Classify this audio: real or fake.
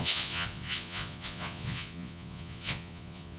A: fake